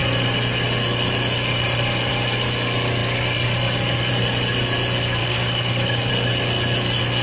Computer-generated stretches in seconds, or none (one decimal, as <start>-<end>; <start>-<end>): 5.2-6.1